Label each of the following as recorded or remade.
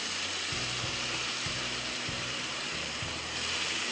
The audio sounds remade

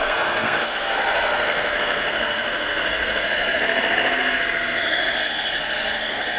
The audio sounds remade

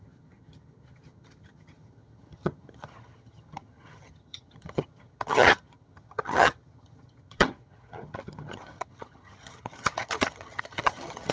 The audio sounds remade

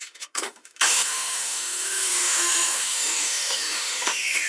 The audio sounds remade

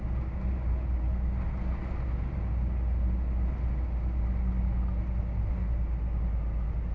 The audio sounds recorded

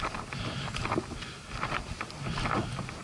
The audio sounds recorded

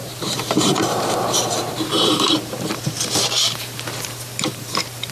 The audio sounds remade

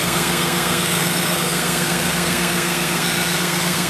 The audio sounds remade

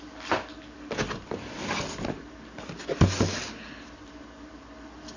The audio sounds recorded